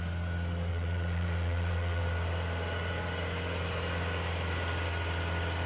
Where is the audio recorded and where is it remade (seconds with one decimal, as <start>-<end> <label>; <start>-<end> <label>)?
0.0-0.7 recorded; 0.7-2.0 remade; 2.0-5.7 recorded